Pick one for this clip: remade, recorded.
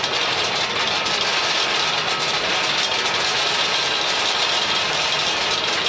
recorded